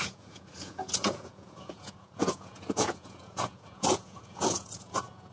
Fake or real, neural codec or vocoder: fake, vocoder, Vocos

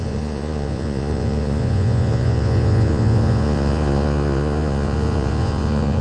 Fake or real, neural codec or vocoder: fake, vocoder, Vocos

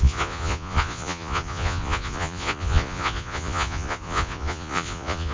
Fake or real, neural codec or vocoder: fake, vocoder, Vocos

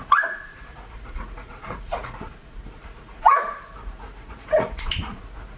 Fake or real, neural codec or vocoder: fake, vocoder, Vocos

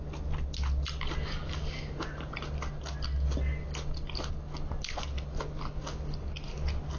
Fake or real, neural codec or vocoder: real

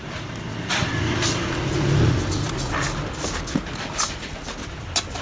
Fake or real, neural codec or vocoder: real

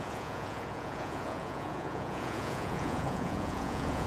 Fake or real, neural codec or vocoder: fake, vocoder, Vocos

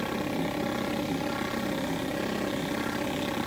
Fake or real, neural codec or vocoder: real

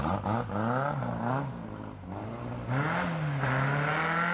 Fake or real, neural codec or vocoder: real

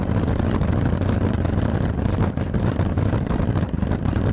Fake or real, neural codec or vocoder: real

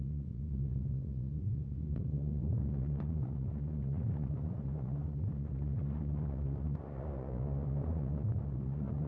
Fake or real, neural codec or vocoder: fake, vocoder, Vocos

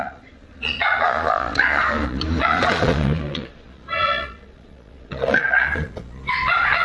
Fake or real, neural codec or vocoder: fake, vocoder, Vocos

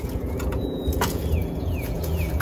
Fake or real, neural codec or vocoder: fake, vocoder, Vocos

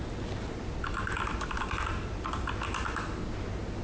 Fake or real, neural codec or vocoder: real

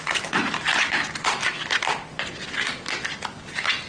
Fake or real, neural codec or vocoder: real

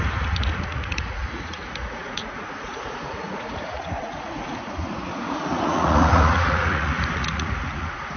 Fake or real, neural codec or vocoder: fake, vocoder, Vocos